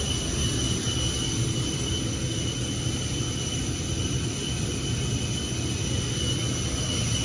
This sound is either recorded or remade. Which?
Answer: recorded